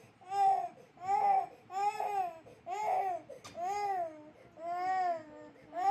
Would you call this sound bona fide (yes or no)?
yes